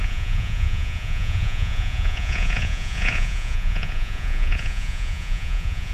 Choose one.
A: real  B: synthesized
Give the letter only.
B